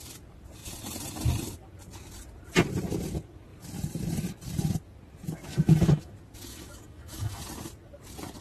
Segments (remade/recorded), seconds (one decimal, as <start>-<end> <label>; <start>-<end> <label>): 0.0-5.5 recorded; 5.5-6.1 remade; 6.1-6.5 recorded; 6.5-7.4 remade; 7.4-8.4 recorded